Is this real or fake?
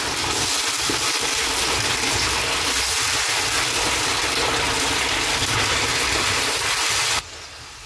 real